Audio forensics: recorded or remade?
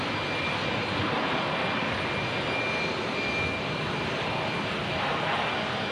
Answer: recorded